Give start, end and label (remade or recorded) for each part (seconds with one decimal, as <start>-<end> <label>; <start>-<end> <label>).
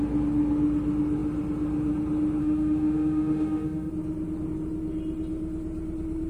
0.0-2.4 recorded; 2.4-3.9 remade; 3.9-6.3 recorded